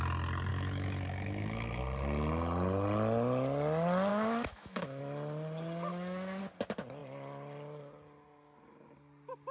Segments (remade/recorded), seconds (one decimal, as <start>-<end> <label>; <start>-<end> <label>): 0.0-0.5 recorded; 0.5-1.8 remade; 1.8-4.1 recorded; 4.1-5.0 remade; 5.0-5.9 recorded; 5.9-6.4 remade; 6.4-9.5 recorded